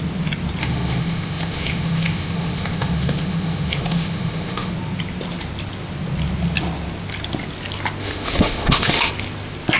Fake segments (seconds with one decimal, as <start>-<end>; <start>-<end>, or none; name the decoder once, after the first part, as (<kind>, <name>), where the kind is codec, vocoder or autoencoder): 0.6-4.7 (autoencoder, DAC-VAE); 8.0-9.1